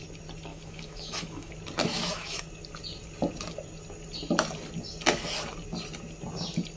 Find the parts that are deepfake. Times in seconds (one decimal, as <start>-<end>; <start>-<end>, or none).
0.5-1.5; 1.9-2.4

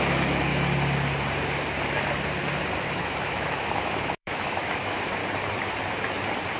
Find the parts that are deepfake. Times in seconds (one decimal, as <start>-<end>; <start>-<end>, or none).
0.0-0.5; 2.8-5.2

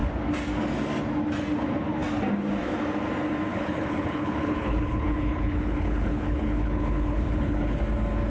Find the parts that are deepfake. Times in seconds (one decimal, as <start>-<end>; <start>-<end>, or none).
3.5-7.8

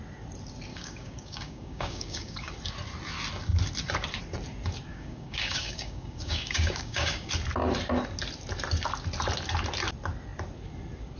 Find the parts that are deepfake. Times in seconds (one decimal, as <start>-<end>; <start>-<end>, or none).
0.7-2.5; 4.9-7.3

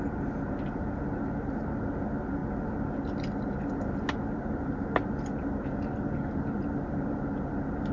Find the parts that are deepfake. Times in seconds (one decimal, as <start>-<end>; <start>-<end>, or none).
none

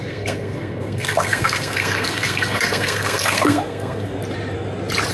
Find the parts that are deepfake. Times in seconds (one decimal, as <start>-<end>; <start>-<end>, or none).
0.0-4.2

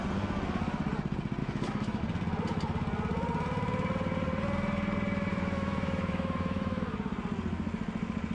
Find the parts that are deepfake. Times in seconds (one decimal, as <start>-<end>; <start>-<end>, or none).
1.4-2.0; 5.3-6.8

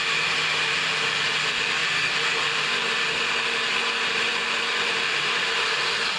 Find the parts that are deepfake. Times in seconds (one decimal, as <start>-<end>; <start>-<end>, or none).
1.8-5.5